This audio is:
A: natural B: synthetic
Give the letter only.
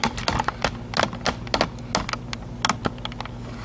A